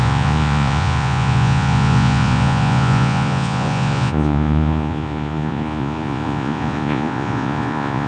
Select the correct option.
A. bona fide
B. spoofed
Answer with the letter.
B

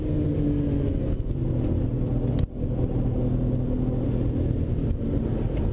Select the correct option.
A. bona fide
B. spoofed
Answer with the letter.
A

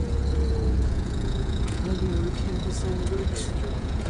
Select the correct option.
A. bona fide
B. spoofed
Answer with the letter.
B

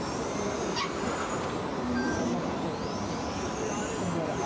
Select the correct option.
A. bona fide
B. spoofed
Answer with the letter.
A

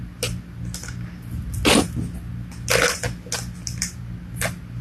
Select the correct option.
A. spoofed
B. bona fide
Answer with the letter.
B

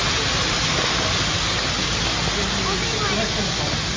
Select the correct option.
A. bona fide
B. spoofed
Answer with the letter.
A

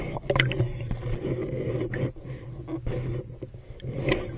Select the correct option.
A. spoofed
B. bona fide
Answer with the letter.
B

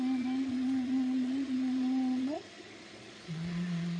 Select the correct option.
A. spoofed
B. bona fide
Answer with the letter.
A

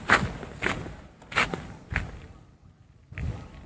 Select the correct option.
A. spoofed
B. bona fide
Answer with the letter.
B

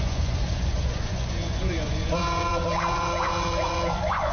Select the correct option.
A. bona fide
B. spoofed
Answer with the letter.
B